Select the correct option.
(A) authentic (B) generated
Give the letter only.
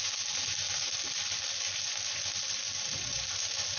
A